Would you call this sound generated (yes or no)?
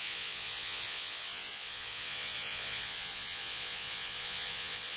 yes